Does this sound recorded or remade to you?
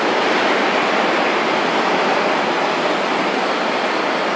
recorded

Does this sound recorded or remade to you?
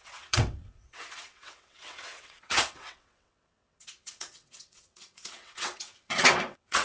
remade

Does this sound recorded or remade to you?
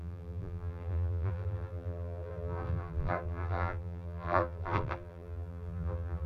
remade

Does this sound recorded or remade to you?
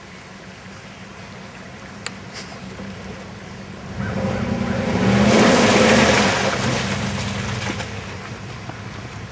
recorded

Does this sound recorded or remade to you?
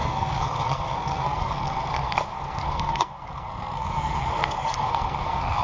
remade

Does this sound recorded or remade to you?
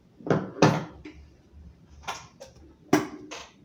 recorded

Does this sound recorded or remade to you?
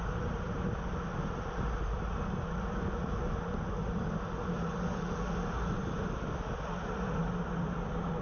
recorded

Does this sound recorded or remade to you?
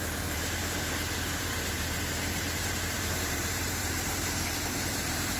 remade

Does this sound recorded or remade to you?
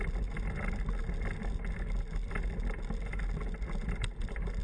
recorded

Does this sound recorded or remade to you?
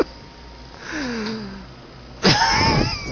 recorded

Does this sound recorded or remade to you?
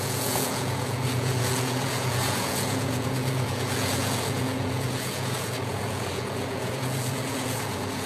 remade